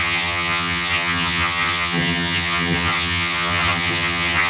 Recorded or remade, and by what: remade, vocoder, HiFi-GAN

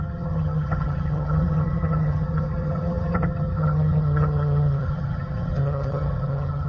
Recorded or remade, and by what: remade, vocoder, HiFi-GAN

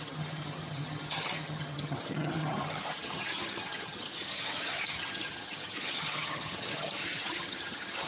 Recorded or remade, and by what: remade, vocoder, HiFi-GAN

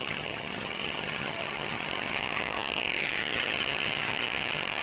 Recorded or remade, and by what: remade, vocoder, HiFi-GAN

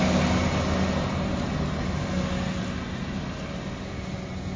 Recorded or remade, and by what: recorded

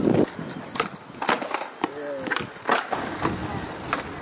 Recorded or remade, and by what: recorded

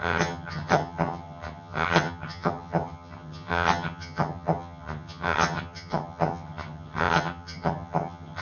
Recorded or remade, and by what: remade, vocoder, HiFi-GAN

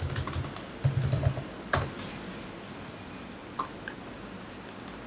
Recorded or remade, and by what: recorded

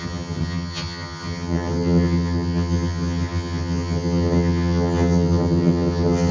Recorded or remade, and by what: remade, vocoder, HiFi-GAN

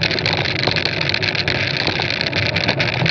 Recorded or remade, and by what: recorded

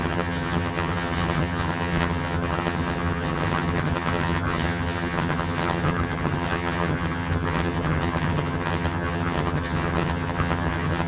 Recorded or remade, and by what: remade, vocoder, HiFi-GAN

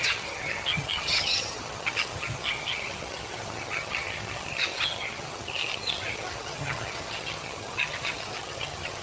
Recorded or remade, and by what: remade, vocoder, HiFi-GAN